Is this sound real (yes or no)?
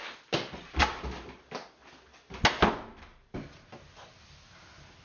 yes